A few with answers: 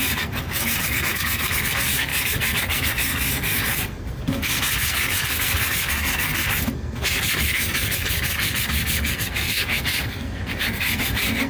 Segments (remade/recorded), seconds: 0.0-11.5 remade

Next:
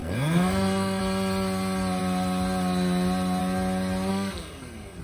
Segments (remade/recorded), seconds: 0.0-1.0 remade; 1.0-4.1 recorded; 4.1-5.0 remade

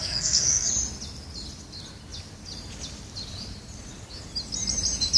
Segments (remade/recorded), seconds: 0.0-0.7 remade; 0.7-5.2 recorded

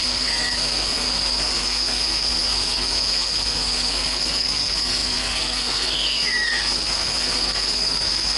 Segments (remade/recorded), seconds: 0.0-8.4 remade

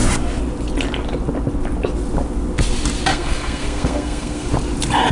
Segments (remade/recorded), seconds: 0.0-3.1 recorded; 3.1-4.5 remade; 4.5-5.1 recorded

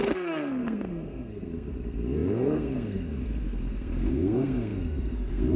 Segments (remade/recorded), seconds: 0.0-5.6 remade